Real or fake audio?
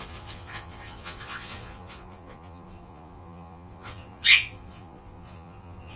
fake